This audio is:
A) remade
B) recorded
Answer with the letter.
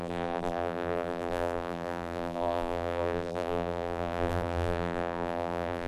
A